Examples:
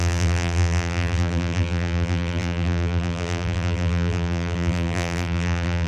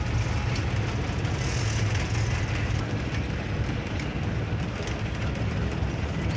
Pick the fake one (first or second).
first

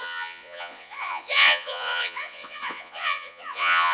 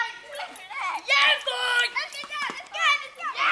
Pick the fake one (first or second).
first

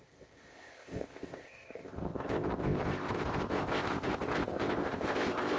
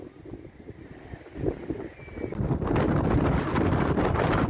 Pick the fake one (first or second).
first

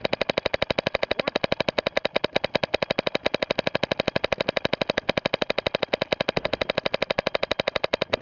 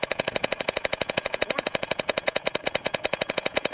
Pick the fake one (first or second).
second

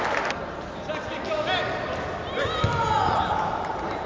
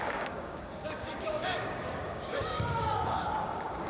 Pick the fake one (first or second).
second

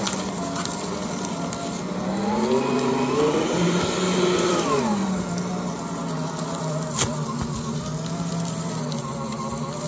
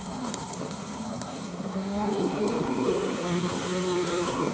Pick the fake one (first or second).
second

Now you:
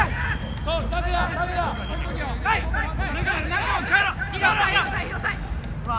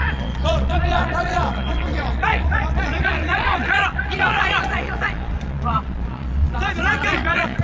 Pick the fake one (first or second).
second